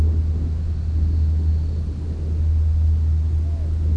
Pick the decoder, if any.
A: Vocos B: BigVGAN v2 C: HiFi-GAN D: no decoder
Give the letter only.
D